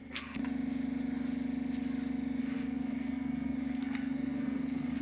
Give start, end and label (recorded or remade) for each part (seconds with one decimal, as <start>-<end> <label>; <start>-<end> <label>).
0.0-0.4 remade; 0.4-2.4 recorded; 2.4-5.0 remade

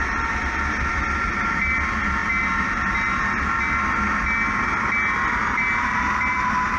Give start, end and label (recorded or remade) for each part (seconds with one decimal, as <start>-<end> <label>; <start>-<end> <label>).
0.0-6.8 recorded

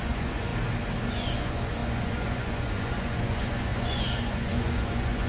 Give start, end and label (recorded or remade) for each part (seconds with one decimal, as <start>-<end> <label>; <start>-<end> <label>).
0.0-0.5 remade; 0.5-1.1 recorded; 1.1-5.3 remade